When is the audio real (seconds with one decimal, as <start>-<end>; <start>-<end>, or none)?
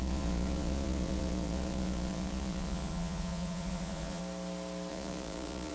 4.2-4.9